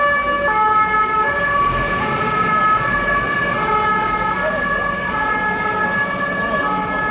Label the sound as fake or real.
real